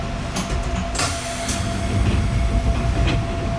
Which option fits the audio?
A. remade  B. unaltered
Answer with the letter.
B